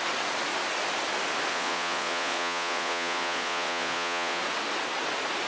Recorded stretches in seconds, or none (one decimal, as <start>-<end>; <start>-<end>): 0.0-1.5; 4.4-5.5